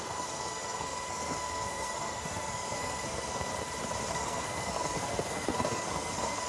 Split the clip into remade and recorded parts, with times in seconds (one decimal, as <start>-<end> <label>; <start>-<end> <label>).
0.0-3.5 remade; 3.5-4.1 recorded; 4.1-6.5 remade